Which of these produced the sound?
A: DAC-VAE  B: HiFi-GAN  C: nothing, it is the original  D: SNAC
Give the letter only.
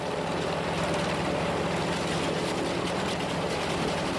C